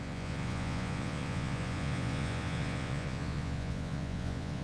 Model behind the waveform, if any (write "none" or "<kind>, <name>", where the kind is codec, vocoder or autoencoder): vocoder, Vocos